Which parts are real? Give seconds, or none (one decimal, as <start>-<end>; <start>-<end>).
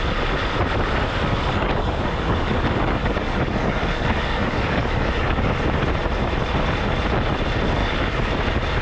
0.0-1.3; 5.5-7.8; 8.3-8.8